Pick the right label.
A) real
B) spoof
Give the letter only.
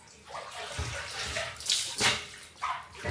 A